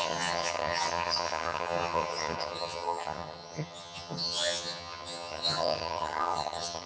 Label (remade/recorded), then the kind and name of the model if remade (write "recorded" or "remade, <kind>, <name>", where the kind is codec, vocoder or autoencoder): remade, vocoder, HiFi-GAN